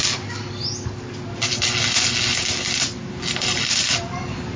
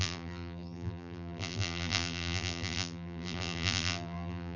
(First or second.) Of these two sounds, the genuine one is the first